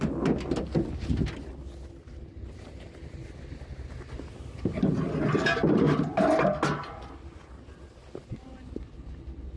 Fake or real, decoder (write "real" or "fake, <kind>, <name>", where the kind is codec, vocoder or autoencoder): real